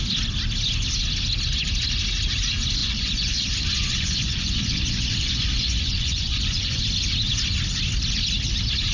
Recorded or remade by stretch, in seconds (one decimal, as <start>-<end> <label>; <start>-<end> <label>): 0.0-2.8 recorded; 2.8-6.8 remade; 6.8-8.9 recorded